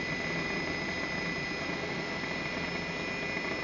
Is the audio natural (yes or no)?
yes